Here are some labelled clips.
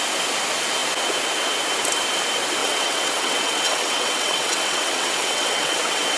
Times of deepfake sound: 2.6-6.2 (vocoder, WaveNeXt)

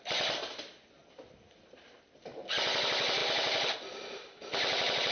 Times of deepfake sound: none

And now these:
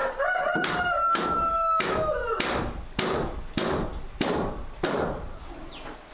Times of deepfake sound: 0.9-2.2 (autoencoder, DAC-VAE)

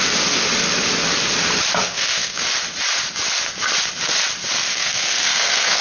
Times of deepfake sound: 1.8-2.4 (codec, SNAC); 4.7-5.8

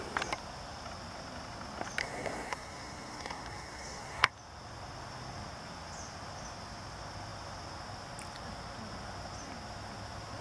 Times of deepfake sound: 2.0-4.3 (codec, SNAC)

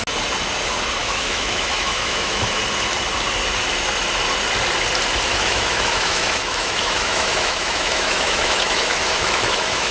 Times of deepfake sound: 1.0-2.6 (autoencoder, DAC-VAE); 5.3-9.9

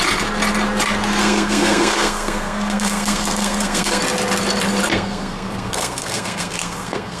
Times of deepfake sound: 1.2-4.0 (codec, SNAC); 4.8-7.2

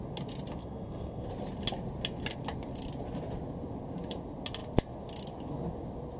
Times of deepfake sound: 0.6-1.3 (codec, SNAC)